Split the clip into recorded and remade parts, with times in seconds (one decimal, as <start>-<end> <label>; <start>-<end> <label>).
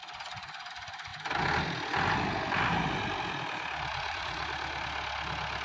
0.0-3.9 recorded; 3.9-4.5 remade; 4.5-5.6 recorded